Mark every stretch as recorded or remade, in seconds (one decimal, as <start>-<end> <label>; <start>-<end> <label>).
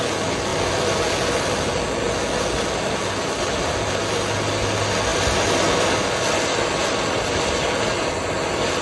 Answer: 0.0-8.8 recorded